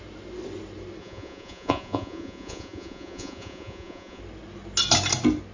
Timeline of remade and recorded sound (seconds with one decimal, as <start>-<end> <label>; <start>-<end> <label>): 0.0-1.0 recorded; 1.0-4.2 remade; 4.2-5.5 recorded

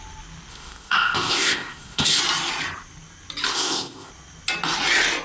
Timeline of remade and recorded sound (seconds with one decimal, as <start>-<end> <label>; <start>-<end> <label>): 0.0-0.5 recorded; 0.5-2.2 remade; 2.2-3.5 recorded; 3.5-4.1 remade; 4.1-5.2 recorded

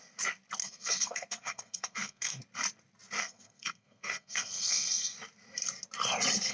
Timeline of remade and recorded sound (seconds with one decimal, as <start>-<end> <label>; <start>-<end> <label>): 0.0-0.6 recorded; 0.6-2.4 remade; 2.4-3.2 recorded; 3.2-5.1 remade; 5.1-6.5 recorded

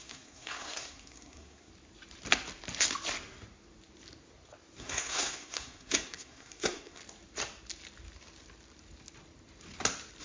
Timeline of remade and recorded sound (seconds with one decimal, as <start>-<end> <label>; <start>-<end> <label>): 0.0-1.7 remade; 1.7-4.8 recorded; 4.8-7.0 remade; 7.0-10.2 recorded